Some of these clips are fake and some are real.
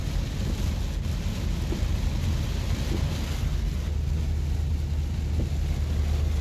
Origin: real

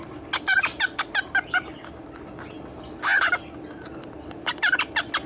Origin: real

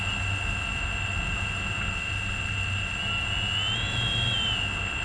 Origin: real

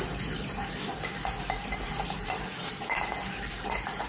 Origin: fake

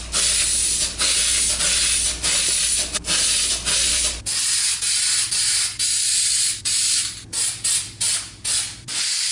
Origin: real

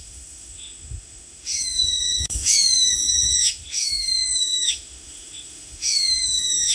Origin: fake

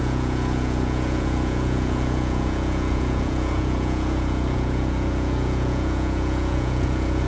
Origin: fake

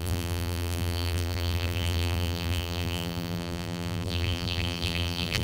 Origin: fake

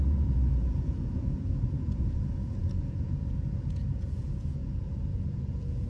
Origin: fake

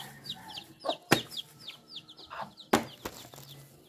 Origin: real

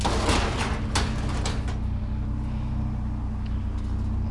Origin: real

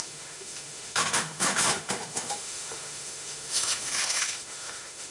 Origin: fake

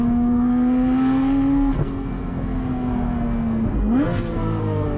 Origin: fake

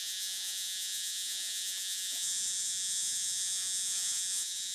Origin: fake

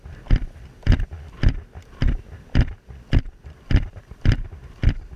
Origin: real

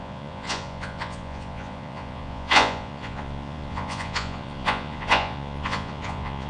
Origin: fake